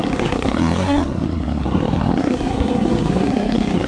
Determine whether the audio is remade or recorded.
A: remade